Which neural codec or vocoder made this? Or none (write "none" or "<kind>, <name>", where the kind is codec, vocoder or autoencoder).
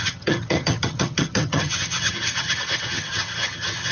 vocoder, HiFi-GAN